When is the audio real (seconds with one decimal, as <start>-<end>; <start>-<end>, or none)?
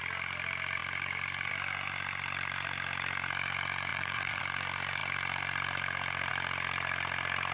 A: 0.0-3.9; 4.4-7.5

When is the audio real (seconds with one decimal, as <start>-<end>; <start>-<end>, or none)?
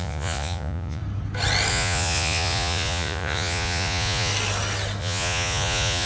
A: 1.0-1.7; 4.3-5.0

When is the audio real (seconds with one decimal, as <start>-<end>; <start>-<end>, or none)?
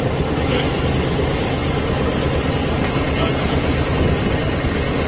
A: 0.0-5.1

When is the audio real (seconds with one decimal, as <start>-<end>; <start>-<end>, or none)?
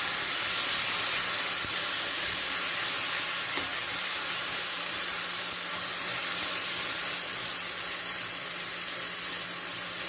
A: 0.0-10.1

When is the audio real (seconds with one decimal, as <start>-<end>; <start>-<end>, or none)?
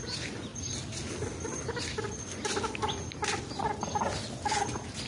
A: 0.0-5.1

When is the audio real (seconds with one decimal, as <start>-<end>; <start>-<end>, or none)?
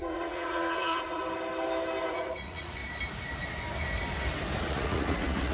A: 1.2-2.1; 2.8-4.6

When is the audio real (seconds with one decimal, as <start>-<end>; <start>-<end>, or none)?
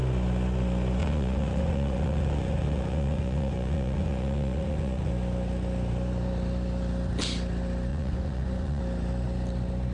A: 0.0-1.0; 5.1-7.9; 8.8-9.9